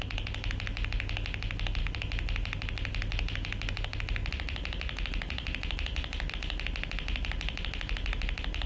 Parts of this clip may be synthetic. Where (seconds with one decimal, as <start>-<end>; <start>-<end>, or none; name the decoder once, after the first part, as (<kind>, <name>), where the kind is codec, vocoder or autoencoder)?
none